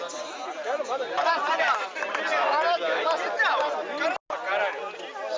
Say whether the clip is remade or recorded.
recorded